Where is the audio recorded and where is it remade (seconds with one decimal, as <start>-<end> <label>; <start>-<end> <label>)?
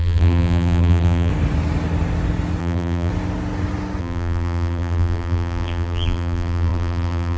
0.0-1.3 remade; 1.3-2.6 recorded; 2.6-3.1 remade; 3.1-4.0 recorded; 4.0-7.4 remade